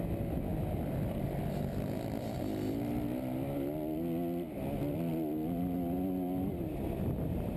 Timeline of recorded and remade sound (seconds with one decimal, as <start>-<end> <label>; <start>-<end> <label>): 0.0-7.6 recorded